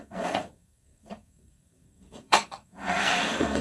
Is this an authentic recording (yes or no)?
no